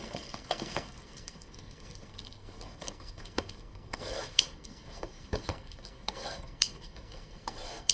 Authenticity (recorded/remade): remade